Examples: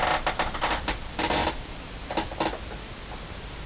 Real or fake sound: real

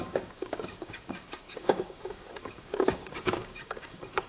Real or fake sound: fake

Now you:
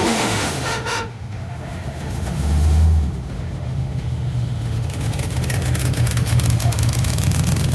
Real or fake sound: fake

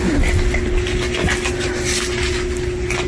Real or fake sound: real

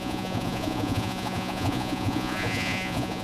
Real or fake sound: fake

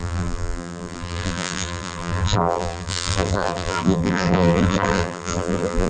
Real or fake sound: fake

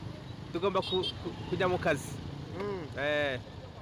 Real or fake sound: real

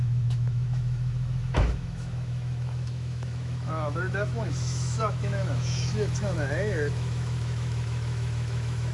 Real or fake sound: fake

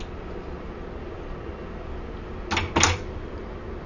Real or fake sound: real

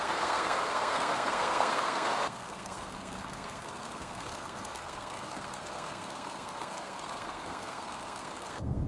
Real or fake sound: fake